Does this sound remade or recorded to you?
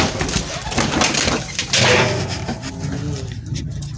recorded